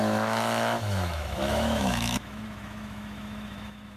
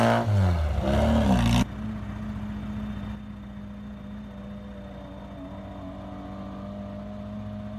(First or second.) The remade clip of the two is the first